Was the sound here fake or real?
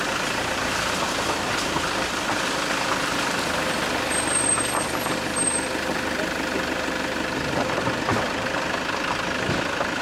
real